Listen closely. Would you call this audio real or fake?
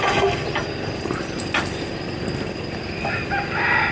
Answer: real